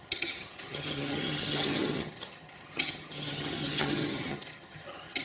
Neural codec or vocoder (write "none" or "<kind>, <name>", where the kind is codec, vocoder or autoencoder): vocoder, HiFi-GAN